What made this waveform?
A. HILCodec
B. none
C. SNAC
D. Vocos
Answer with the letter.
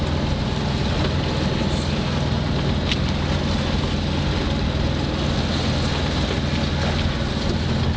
B